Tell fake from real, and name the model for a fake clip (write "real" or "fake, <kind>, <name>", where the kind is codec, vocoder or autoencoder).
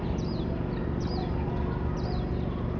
real